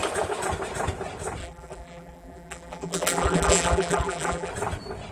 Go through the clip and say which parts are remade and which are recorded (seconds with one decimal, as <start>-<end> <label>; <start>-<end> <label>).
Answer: 0.0-1.4 recorded; 1.4-4.5 remade; 4.5-5.1 recorded